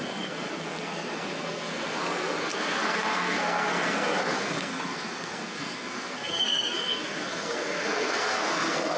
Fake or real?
fake